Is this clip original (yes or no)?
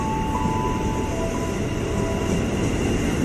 yes